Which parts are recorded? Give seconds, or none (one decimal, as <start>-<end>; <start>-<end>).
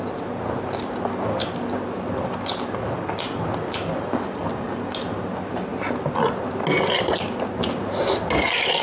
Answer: 0.0-8.8